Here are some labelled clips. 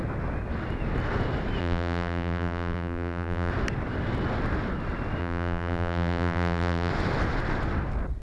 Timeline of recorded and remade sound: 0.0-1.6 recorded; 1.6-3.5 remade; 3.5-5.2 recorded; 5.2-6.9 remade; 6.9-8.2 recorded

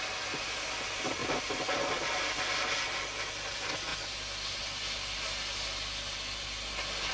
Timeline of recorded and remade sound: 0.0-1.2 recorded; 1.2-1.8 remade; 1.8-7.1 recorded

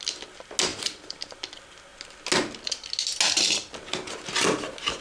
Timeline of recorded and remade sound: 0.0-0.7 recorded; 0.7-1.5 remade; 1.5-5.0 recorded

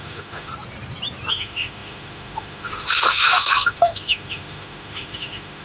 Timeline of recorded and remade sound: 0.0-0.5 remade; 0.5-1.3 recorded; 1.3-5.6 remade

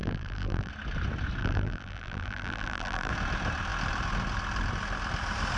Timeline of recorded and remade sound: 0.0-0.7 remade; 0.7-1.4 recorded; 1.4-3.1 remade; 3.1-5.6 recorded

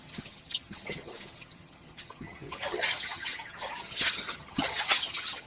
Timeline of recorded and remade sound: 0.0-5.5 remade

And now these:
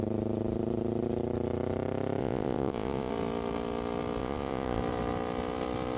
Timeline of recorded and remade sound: 0.0-2.2 recorded; 2.2-3.1 remade; 3.1-4.2 recorded; 4.2-4.8 remade; 4.8-6.0 recorded

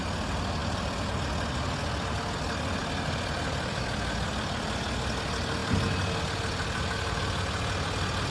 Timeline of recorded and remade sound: 0.0-8.3 recorded